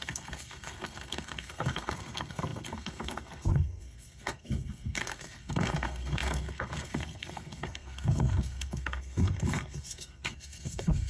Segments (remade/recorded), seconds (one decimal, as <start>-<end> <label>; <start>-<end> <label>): 0.0-11.1 remade